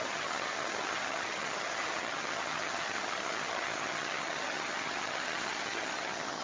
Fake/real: fake